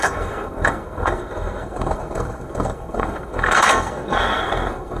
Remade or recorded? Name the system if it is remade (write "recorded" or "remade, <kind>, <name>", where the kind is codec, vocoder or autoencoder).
remade, codec, SNAC